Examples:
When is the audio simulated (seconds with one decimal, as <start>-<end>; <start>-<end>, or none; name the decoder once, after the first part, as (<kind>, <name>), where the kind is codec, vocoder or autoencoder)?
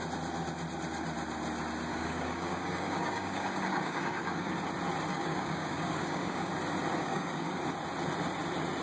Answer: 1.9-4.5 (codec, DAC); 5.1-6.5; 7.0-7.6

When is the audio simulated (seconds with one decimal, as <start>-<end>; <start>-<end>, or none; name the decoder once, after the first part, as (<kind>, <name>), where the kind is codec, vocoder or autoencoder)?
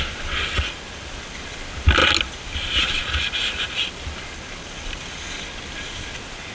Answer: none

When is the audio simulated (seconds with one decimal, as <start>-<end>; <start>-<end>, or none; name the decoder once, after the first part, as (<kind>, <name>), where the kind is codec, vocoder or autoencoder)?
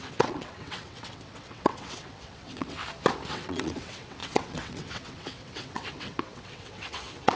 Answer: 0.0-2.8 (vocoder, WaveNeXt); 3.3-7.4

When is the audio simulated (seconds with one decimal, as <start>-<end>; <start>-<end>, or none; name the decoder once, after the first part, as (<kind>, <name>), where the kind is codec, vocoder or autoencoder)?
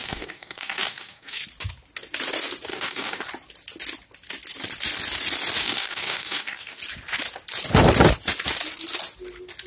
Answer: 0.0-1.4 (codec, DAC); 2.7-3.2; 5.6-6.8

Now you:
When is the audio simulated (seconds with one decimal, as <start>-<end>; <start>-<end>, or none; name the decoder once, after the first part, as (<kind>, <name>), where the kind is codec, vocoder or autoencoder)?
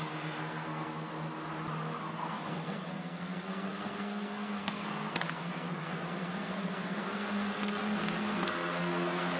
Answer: 0.0-1.1 (codec, SNAC); 2.0-9.4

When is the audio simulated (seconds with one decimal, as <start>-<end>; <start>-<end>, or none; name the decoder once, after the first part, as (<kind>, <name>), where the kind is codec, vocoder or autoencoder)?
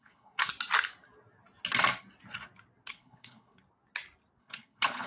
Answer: 0.0-0.5 (codec, HILCodec); 2.9-3.6; 4.4-5.1